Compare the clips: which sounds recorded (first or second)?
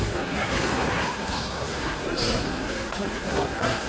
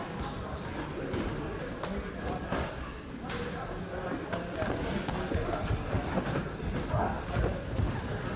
second